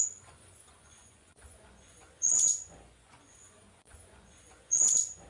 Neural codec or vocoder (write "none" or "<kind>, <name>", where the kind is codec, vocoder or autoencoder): vocoder, Vocos